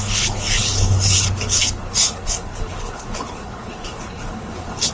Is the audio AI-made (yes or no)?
yes